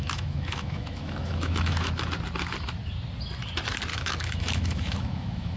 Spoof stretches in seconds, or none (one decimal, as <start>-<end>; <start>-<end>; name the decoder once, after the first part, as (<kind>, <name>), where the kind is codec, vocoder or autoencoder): 0.0-1.9 (autoencoder, DAC-VAE); 3.9-5.6